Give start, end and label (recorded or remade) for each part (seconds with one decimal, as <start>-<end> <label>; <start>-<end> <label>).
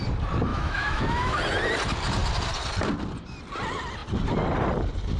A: 0.0-0.5 recorded; 0.5-1.4 remade; 1.4-5.2 recorded